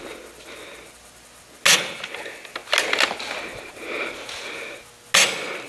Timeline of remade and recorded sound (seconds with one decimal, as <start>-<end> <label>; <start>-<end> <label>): 0.0-5.7 recorded